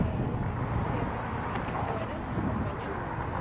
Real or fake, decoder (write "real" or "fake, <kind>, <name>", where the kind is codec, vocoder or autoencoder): fake, vocoder, BigVGAN v2